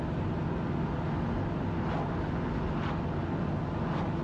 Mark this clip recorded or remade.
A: recorded